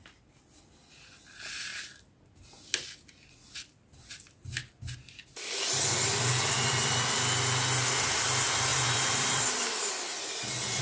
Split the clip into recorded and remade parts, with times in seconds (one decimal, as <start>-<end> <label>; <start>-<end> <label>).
0.0-8.7 recorded; 8.7-9.9 remade; 9.9-10.8 recorded